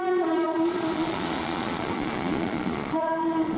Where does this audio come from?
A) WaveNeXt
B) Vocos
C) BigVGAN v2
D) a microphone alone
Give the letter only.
B